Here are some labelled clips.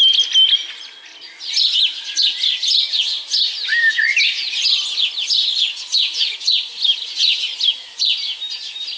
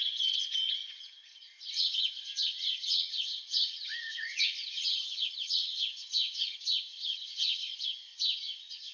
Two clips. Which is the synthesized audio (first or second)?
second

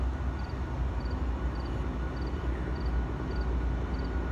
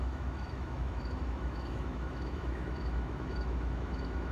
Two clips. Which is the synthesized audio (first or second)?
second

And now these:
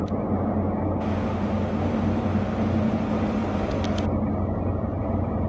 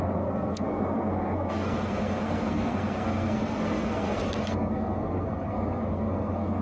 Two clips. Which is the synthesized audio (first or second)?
second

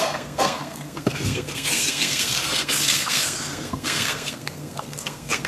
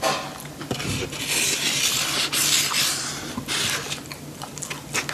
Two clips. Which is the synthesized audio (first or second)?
first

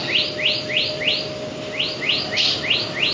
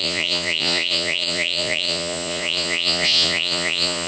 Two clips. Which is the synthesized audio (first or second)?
second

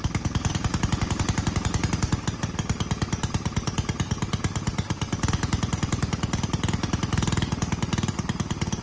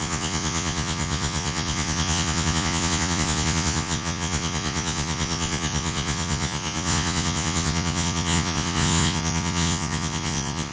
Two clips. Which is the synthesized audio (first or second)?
second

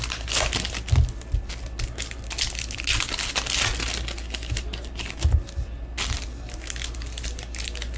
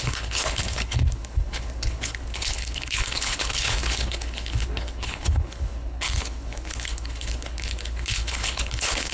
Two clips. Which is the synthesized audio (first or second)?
second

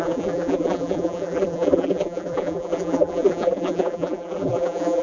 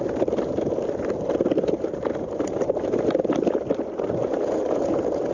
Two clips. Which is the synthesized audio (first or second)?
first